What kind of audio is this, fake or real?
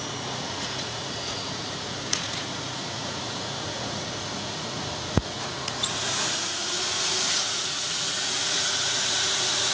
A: fake